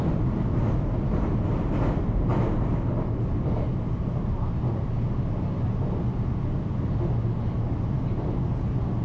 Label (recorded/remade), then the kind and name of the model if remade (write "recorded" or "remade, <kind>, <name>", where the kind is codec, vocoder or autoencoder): recorded